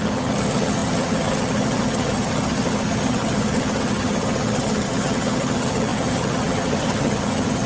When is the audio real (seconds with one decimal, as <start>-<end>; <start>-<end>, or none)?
none